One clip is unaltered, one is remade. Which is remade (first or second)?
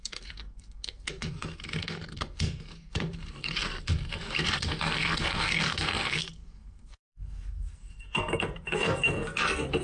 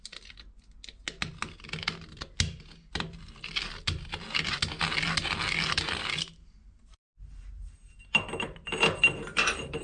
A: first